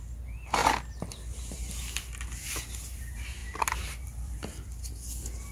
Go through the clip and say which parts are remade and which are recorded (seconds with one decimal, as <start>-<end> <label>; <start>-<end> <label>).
0.0-3.4 recorded; 3.4-4.8 remade; 4.8-5.5 recorded